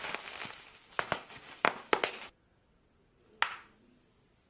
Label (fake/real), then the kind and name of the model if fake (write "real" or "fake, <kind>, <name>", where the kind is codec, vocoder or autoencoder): real